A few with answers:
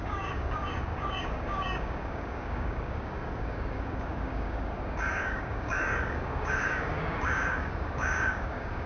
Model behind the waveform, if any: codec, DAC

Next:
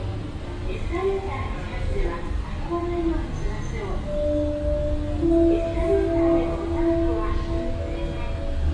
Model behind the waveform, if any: none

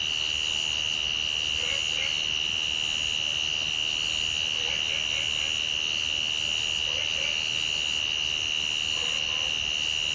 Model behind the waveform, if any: none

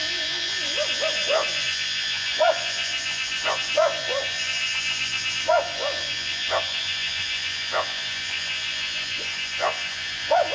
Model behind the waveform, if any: vocoder, Vocos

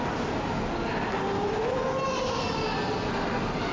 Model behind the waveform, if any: none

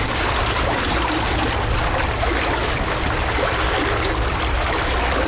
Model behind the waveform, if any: none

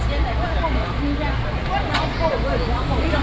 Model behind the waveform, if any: none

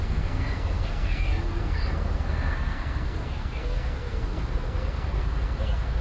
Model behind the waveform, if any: codec, SNAC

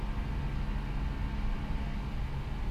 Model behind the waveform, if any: none